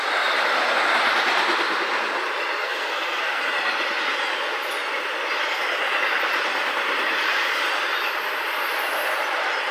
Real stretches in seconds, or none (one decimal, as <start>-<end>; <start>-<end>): 0.0-2.6; 3.4-9.7